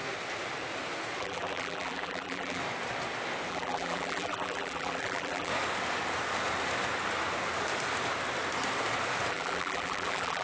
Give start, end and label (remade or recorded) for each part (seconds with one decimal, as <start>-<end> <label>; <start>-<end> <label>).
0.0-1.2 recorded; 1.2-2.6 remade; 2.6-3.5 recorded; 3.5-5.5 remade; 5.5-9.3 recorded; 9.3-10.4 remade